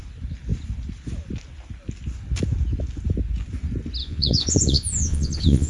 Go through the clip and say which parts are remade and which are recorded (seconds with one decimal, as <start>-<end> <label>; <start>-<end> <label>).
0.0-4.0 recorded; 4.0-5.7 remade